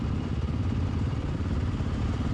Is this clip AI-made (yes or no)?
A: yes